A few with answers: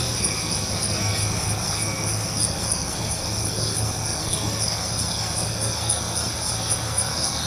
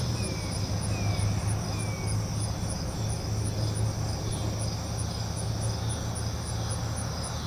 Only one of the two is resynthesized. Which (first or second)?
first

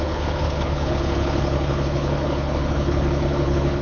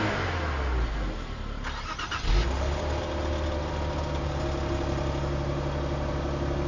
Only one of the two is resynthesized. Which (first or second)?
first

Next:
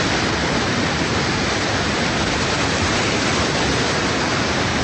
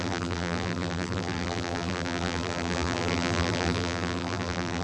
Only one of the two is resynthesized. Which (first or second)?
second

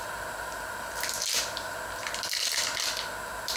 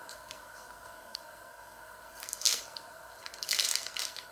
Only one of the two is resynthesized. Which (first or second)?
second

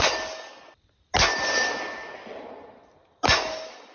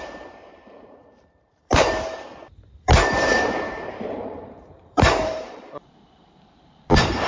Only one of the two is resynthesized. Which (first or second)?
second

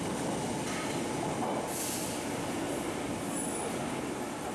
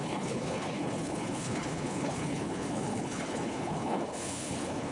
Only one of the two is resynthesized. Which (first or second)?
second